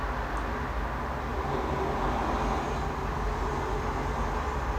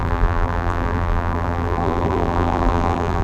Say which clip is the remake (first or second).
second